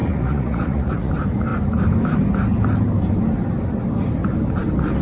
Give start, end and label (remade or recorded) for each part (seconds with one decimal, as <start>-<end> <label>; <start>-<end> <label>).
0.0-1.1 remade; 1.1-5.0 recorded